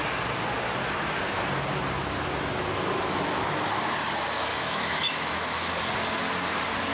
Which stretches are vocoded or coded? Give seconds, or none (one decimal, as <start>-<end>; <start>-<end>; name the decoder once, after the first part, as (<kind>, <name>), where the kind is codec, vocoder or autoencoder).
4.5-5.7 (autoencoder, DAC-VAE)